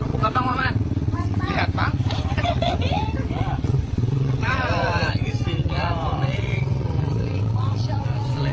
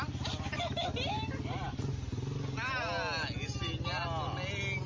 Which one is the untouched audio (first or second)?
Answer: second